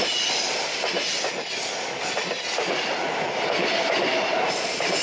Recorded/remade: recorded